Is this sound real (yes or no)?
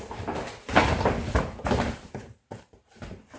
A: no